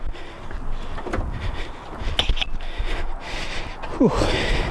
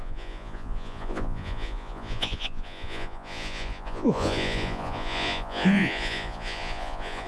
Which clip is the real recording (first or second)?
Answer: first